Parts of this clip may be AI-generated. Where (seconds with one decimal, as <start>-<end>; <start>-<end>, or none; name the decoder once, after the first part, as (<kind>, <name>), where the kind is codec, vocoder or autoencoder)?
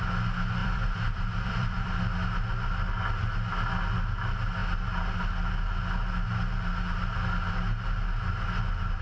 0.6-2.0 (vocoder, BigVGAN v2)